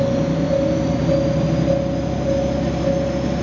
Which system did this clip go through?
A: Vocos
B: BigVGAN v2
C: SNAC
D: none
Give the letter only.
D